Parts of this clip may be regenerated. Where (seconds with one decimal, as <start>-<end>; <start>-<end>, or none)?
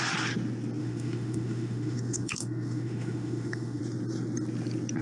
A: 0.8-3.8